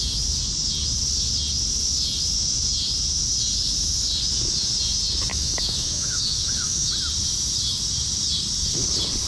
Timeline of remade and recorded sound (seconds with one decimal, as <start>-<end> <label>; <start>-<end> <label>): 0.0-5.3 recorded; 5.3-6.9 remade; 6.9-9.3 recorded